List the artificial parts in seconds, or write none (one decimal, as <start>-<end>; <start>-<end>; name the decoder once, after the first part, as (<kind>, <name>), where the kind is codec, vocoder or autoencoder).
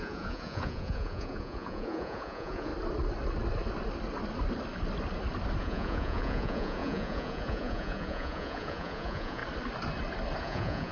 0.0-2.7 (vocoder, Vocos); 5.6-9.4; 10.4-10.9